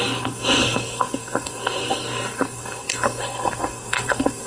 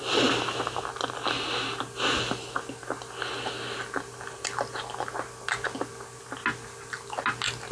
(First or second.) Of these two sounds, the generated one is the first